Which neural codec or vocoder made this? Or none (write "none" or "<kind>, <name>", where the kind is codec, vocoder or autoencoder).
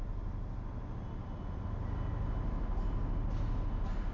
none